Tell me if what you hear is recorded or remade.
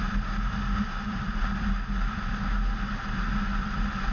recorded